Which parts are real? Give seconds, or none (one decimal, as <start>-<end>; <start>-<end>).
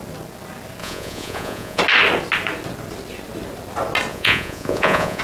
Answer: 0.0-0.8; 1.8-4.1